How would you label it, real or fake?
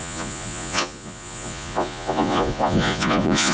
fake